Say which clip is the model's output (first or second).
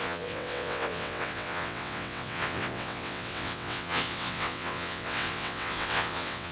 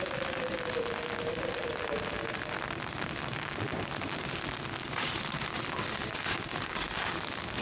first